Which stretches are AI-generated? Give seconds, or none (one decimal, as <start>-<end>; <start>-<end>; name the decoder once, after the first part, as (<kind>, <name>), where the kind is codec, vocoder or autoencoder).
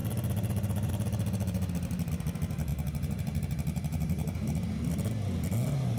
0.0-2.1 (vocoder, BigVGAN v2); 2.7-4.4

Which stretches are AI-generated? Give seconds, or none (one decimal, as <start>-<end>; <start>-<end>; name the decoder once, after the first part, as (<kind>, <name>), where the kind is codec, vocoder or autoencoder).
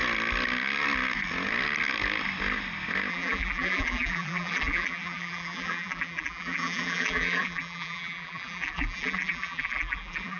3.1-10.4 (vocoder, BigVGAN v2)